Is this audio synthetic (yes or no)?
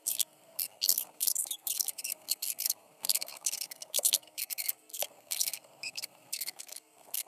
yes